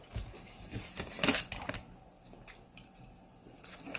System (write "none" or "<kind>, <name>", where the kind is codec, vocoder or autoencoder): none